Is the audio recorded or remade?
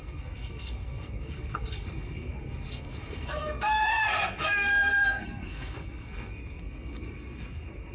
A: remade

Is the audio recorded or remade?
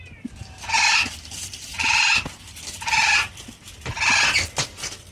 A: recorded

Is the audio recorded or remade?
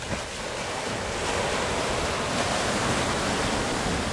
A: recorded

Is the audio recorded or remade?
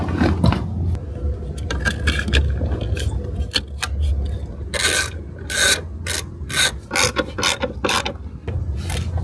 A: recorded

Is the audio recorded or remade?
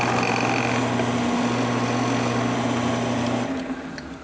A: recorded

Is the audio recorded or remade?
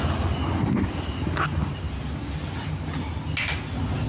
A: recorded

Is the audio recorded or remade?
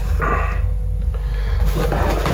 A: recorded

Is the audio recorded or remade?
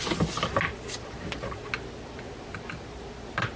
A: recorded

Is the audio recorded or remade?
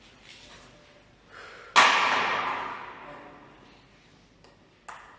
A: recorded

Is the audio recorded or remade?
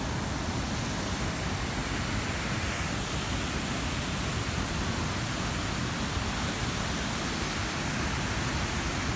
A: recorded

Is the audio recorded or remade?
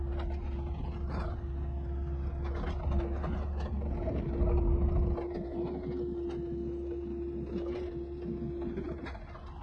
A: recorded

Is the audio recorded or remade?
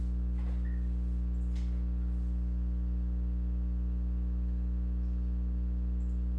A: recorded